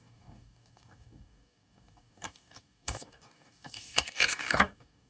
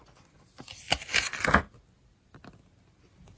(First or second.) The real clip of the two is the second